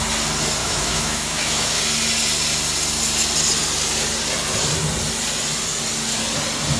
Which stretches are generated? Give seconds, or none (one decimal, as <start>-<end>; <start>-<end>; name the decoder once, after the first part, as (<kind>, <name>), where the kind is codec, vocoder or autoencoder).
0.6-1.8 (autoencoder, DAC-VAE)